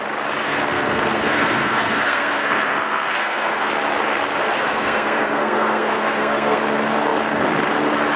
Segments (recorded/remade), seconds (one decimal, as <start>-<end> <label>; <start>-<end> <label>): 0.0-0.4 recorded; 0.4-3.7 remade; 3.7-4.4 recorded; 4.4-6.6 remade; 6.6-8.2 recorded